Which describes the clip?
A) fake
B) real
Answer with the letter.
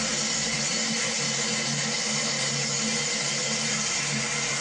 A